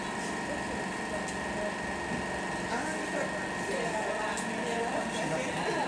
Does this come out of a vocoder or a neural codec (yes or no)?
no